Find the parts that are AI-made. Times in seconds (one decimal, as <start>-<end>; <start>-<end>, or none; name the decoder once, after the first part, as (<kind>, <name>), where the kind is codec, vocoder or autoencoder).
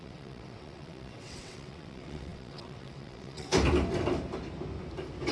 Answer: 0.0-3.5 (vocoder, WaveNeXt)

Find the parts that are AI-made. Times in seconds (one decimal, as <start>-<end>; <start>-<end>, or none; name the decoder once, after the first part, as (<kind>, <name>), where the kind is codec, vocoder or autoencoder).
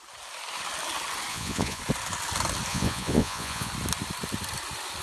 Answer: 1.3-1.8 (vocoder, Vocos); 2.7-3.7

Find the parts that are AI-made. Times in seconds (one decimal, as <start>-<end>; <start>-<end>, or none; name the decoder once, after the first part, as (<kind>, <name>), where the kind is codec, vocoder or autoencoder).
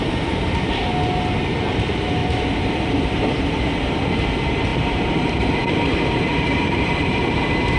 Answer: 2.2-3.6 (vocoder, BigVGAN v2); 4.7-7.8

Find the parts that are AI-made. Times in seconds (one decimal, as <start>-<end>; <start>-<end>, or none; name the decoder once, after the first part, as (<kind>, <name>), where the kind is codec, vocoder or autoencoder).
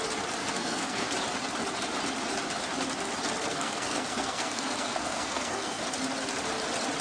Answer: 0.4-1.1 (codec, SNAC); 3.5-5.8